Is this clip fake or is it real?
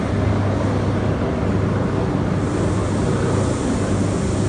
real